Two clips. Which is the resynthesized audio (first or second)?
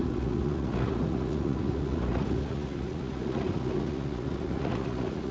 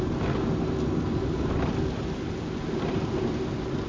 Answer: first